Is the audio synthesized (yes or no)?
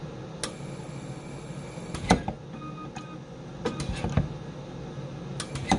no